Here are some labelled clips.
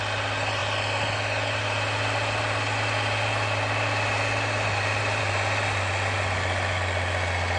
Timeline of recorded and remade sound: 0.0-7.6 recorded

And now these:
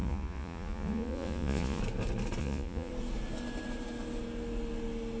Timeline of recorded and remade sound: 0.0-1.8 remade; 1.8-2.4 recorded; 2.4-2.9 remade; 2.9-5.2 recorded

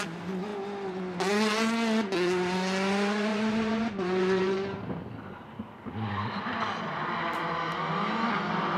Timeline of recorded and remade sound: 0.0-3.3 recorded; 3.3-5.0 remade; 5.0-8.8 recorded

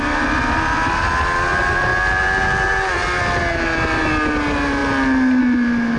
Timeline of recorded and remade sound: 0.0-6.0 recorded